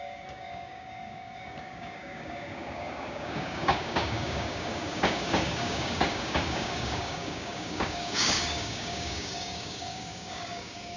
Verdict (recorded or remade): remade